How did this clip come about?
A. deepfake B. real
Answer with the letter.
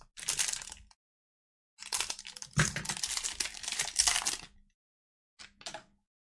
B